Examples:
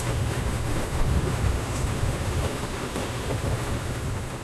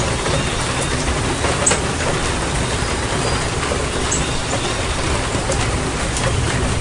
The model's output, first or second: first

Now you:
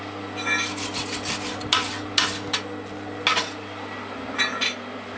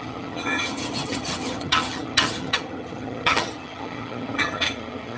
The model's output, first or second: second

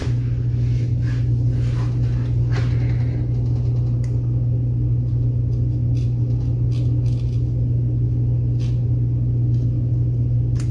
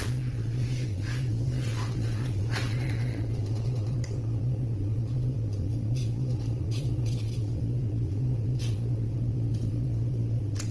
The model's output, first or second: second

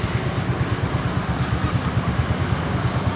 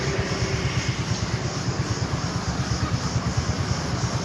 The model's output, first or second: second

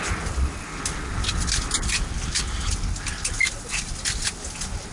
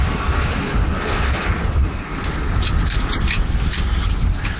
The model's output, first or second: second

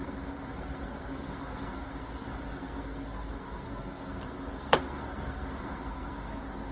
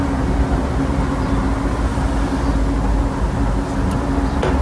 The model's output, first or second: first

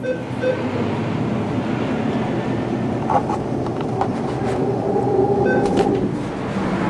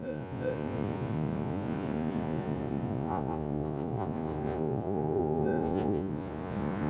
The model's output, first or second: second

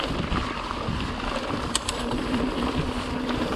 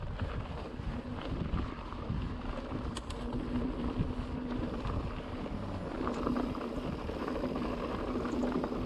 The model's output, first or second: first